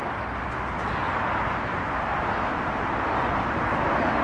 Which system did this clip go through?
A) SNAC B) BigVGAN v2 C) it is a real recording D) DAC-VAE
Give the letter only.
C